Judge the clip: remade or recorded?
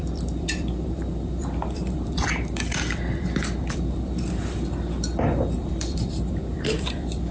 remade